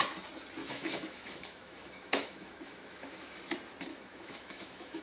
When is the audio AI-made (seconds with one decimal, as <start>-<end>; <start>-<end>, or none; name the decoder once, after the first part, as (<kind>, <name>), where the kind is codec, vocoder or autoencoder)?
0.6-3.4 (autoencoder, DAC-VAE); 3.9-5.0